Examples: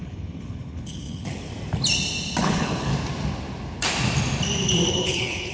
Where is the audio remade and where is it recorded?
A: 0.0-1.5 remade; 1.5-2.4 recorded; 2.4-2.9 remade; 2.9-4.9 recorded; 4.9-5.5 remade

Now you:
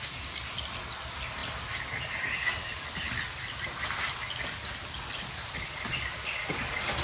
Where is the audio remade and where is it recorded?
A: 0.0-7.0 recorded

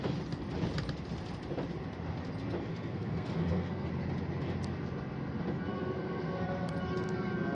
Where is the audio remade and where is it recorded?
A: 0.0-2.7 recorded; 2.7-3.9 remade; 3.9-5.7 recorded; 5.7-6.7 remade; 6.7-7.5 recorded

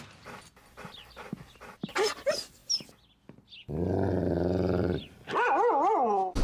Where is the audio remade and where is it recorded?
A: 0.0-6.4 recorded

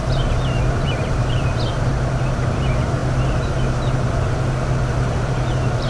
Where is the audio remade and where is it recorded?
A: 0.0-1.9 remade; 1.9-2.4 recorded; 2.4-3.0 remade; 3.0-4.9 recorded; 4.9-5.9 remade